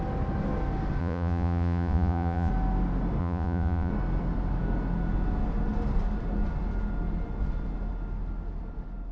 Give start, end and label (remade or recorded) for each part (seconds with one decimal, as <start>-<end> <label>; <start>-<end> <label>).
0.0-1.0 recorded; 1.0-2.5 remade; 2.5-3.2 recorded; 3.2-3.9 remade; 3.9-9.1 recorded